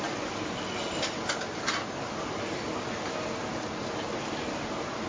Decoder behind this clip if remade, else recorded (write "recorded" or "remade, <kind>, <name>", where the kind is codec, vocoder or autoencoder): recorded